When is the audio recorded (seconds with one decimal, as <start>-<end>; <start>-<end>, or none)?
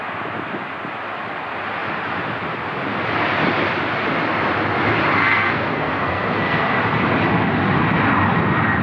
0.0-5.2; 6.7-8.8